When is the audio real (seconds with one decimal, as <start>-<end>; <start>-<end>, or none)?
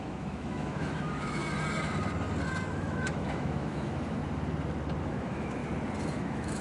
1.4-2.7; 4.2-5.0; 5.6-6.1